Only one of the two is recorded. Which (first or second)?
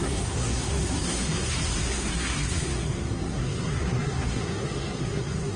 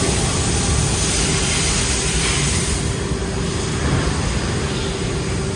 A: second